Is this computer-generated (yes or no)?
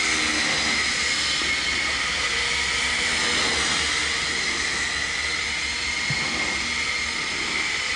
no